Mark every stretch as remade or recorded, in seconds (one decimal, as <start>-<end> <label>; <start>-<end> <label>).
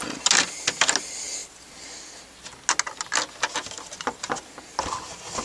0.0-5.4 recorded